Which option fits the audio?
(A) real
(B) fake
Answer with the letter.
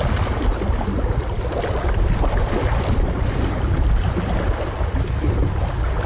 A